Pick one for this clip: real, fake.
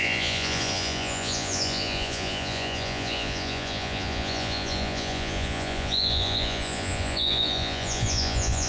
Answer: fake